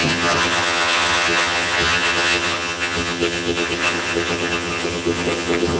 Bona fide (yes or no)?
no